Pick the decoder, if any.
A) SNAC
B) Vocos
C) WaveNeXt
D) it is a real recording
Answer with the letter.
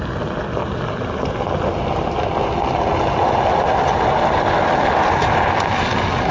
D